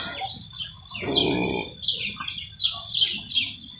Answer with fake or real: real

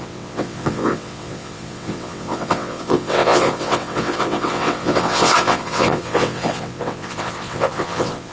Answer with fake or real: fake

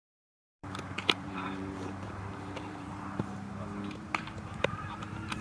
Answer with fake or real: fake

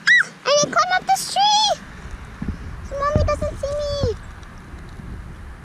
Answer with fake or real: real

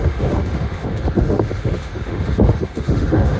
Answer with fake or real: fake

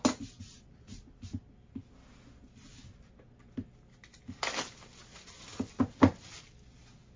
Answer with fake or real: real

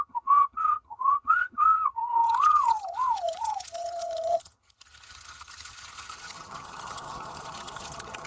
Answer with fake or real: fake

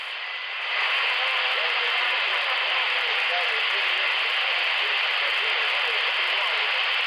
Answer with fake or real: real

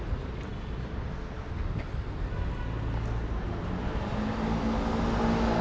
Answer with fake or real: real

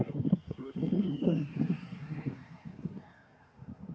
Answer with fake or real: fake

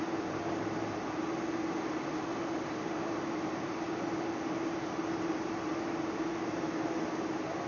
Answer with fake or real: real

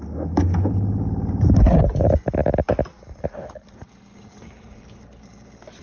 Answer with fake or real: real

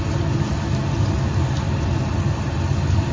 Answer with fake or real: real